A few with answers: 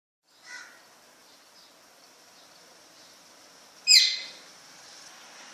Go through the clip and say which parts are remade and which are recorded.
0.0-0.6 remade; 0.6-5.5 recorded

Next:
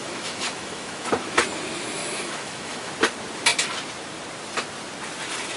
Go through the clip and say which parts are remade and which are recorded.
0.0-1.1 remade; 1.1-2.0 recorded; 2.0-2.9 remade; 2.9-5.6 recorded